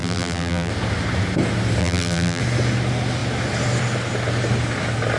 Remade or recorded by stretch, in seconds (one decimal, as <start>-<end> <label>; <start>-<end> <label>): 0.0-0.7 remade; 0.7-1.8 recorded; 1.8-2.4 remade; 2.4-5.2 recorded